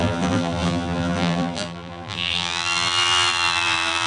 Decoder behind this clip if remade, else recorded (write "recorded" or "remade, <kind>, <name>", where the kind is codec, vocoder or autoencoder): remade, vocoder, BigVGAN v2